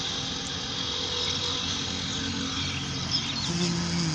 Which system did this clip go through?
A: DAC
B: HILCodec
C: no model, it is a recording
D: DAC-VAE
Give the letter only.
C